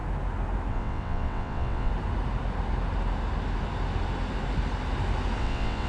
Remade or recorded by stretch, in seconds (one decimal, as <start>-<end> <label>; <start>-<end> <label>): 0.0-0.7 recorded; 0.7-1.9 remade; 1.9-5.4 recorded; 5.4-5.9 remade